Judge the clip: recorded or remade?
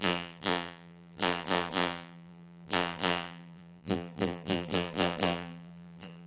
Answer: remade